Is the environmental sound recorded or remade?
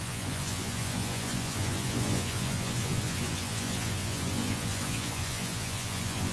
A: remade